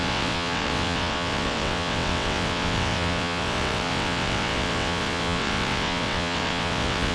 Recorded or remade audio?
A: remade